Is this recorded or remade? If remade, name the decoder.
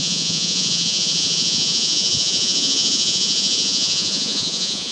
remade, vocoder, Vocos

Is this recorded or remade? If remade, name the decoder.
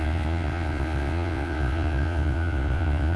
remade, vocoder, Vocos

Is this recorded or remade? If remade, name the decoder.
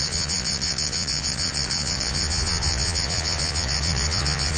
remade, vocoder, Vocos